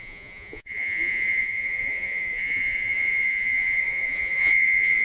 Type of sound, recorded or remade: remade